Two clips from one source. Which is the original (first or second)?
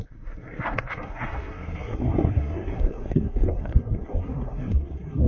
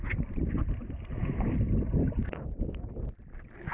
second